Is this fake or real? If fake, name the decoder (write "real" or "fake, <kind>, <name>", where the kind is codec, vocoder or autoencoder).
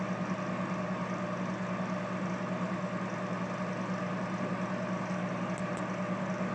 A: real